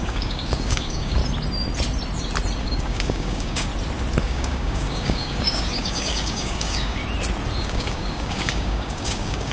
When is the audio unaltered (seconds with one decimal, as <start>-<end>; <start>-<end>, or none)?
1.2-2.6; 3.7-4.2; 7.0-7.6

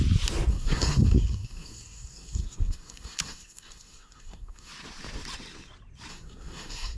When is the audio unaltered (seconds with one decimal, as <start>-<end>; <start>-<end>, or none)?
0.0-0.5; 4.7-6.1

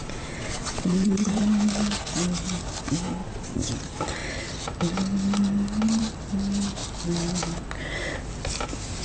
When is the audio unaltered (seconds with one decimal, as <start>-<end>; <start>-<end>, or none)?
1.4-3.2; 3.7-9.0

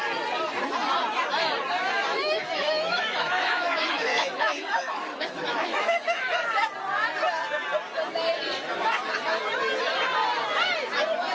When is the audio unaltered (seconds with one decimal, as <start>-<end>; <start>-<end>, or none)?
0.0-2.1; 6.4-11.3

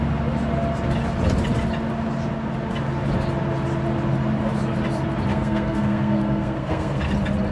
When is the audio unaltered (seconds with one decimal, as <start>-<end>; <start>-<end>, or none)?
0.0-5.3; 7.1-7.5